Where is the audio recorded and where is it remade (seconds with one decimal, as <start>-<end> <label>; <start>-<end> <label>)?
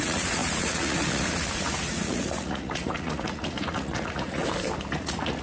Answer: 0.0-4.4 remade; 4.4-4.9 recorded; 4.9-5.4 remade